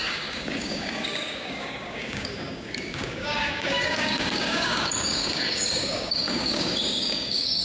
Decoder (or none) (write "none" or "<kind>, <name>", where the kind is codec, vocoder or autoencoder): codec, DAC